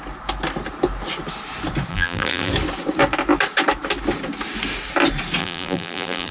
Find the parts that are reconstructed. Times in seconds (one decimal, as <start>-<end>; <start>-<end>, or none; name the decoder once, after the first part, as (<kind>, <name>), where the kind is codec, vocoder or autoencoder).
1.9-2.5 (vocoder, BigVGAN v2); 5.4-6.3